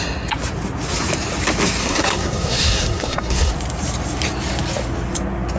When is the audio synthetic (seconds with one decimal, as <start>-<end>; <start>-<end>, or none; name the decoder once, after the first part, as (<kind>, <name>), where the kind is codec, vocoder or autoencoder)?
1.8-3.5 (codec, SNAC)